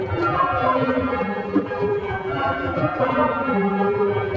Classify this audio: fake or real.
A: fake